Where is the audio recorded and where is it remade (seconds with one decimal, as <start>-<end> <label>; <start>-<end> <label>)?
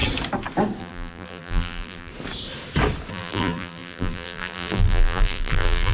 0.0-0.8 recorded; 0.8-2.1 remade; 2.1-3.1 recorded; 3.1-5.9 remade